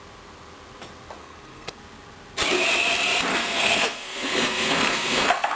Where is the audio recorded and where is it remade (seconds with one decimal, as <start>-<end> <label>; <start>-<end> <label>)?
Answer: 0.0-1.2 recorded; 1.2-1.8 remade; 1.8-3.3 recorded; 3.3-5.6 remade

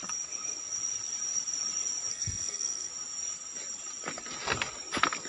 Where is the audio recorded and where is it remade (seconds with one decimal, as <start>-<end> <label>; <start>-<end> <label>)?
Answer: 0.0-2.1 recorded; 2.1-2.9 remade; 2.9-5.3 recorded

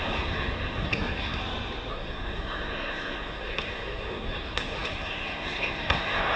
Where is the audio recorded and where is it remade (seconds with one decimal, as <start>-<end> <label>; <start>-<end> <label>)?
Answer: 0.0-1.4 remade; 1.4-1.9 recorded; 1.9-6.4 remade

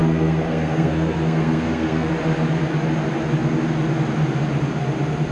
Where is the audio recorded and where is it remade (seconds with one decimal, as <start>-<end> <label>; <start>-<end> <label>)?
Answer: 0.0-2.1 remade; 2.1-5.3 recorded

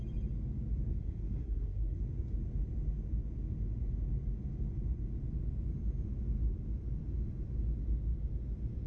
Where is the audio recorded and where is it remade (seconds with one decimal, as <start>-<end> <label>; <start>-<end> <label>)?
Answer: 0.0-0.9 recorded; 0.9-2.0 remade; 2.0-8.9 recorded

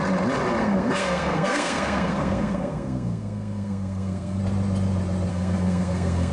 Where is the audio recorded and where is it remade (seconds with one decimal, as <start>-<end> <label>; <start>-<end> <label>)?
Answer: 0.0-0.6 recorded; 0.6-4.4 remade; 4.4-5.3 recorded; 5.3-6.3 remade

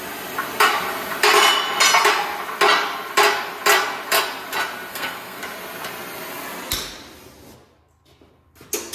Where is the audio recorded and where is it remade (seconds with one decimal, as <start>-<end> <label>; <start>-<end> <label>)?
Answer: 0.0-4.9 recorded; 4.9-5.4 remade; 5.4-8.9 recorded

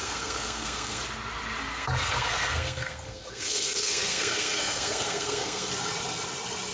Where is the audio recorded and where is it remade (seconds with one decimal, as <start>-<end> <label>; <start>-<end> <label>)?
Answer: 0.0-1.0 remade; 1.0-1.7 recorded; 1.7-5.7 remade; 5.7-6.7 recorded